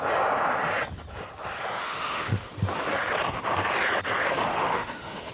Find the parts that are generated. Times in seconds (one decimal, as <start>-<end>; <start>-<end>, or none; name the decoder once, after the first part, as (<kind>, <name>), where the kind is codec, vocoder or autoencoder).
1.8-2.5 (autoencoder, DAC-VAE); 4.5-5.3